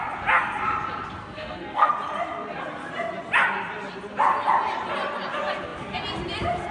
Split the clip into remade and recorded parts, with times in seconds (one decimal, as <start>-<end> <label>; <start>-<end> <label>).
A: 0.0-1.2 recorded; 1.2-1.9 remade; 1.9-6.7 recorded